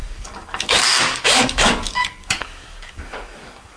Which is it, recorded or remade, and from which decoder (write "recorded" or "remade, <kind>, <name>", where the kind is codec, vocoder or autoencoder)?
remade, codec, DAC